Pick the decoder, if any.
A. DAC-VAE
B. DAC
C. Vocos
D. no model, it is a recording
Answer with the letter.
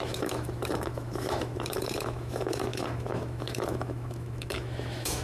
A